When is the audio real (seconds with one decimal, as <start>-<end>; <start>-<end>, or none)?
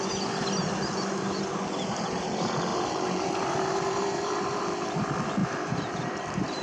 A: 0.0-2.7; 4.7-5.4